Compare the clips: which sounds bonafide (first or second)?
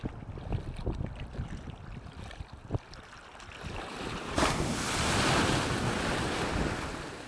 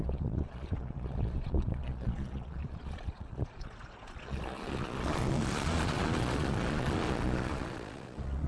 first